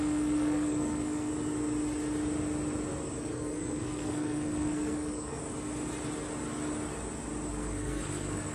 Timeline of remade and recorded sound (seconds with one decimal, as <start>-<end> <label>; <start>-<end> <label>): 0.0-1.3 remade; 1.3-3.2 recorded; 3.2-5.4 remade; 5.4-7.5 recorded; 7.5-8.5 remade